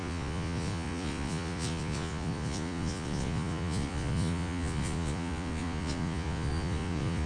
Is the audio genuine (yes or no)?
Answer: no